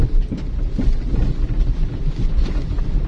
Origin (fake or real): real